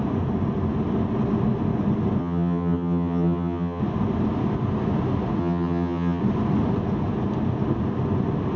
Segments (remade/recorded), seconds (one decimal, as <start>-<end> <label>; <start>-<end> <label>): 0.0-2.2 recorded; 2.2-3.8 remade; 3.8-5.4 recorded; 5.4-6.2 remade; 6.2-8.6 recorded